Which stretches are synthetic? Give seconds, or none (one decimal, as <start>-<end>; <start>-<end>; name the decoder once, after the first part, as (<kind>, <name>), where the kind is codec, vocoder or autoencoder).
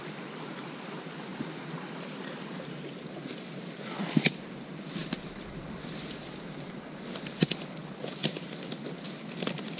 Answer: 5.0-7.8 (vocoder, BigVGAN v2); 8.2-8.7